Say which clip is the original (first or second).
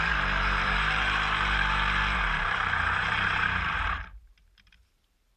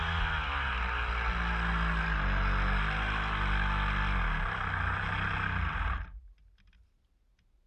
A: second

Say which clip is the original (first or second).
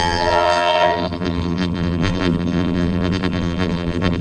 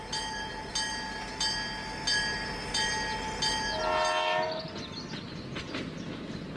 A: second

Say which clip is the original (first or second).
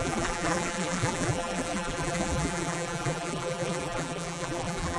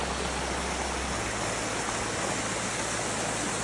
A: second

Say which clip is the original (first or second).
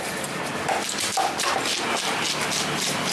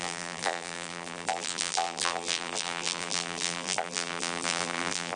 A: first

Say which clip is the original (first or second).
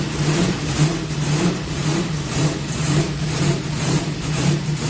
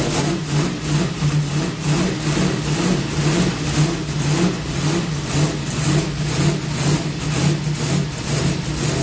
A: second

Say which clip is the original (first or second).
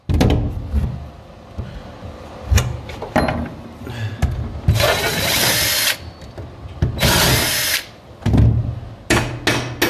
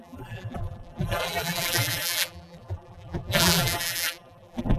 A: first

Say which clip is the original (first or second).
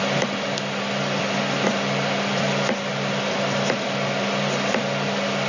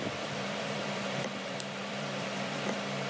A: first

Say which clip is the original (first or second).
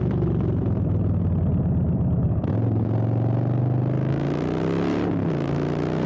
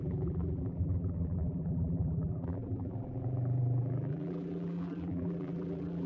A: first